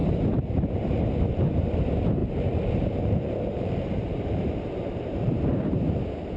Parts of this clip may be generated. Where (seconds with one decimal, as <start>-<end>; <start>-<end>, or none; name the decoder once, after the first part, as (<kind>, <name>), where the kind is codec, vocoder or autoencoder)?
0.0-1.0 (vocoder, BigVGAN v2); 2.2-6.0